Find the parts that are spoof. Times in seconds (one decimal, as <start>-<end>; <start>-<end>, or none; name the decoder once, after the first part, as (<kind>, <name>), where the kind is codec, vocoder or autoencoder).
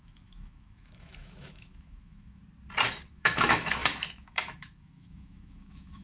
0.0-2.4 (autoencoder, DAC-VAE); 3.1-6.0